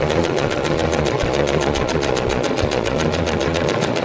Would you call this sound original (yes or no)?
no